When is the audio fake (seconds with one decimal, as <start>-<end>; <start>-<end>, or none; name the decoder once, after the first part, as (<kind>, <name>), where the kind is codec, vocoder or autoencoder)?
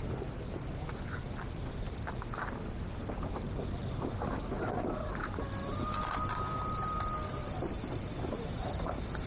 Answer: none